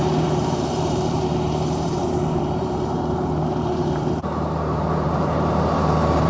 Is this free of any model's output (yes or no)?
no